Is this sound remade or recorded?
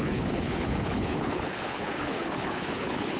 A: remade